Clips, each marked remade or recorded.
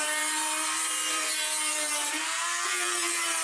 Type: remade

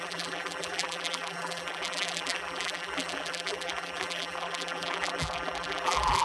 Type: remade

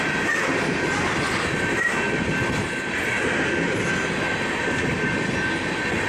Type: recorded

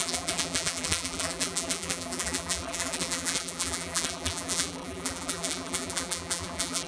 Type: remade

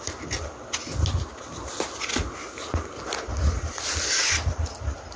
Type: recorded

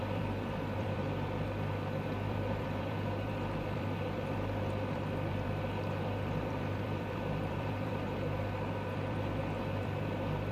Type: remade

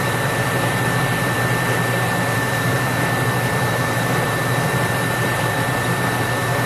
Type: remade